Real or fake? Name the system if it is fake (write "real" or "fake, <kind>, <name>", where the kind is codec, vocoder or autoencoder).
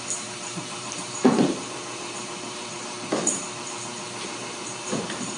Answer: fake, vocoder, BigVGAN v2